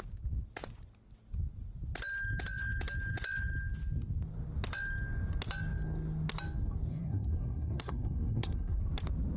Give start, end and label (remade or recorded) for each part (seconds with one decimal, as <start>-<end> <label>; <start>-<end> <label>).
0.0-6.9 recorded; 6.9-8.8 remade; 8.8-9.4 recorded